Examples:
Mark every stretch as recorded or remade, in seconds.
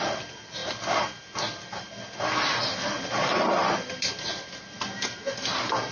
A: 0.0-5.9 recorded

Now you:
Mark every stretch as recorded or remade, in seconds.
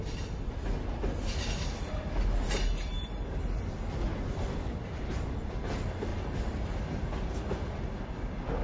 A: 0.0-6.1 recorded; 6.1-6.8 remade; 6.8-8.6 recorded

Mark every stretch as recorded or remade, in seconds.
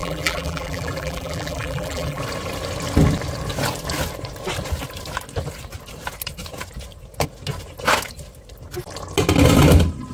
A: 0.0-2.2 remade; 2.2-10.1 recorded